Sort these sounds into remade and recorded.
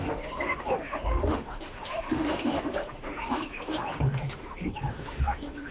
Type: remade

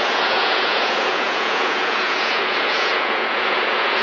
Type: remade